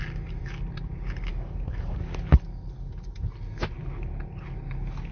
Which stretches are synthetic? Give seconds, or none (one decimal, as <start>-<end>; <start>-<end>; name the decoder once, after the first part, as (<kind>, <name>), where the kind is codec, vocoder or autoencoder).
1.3-2.1 (codec, DAC)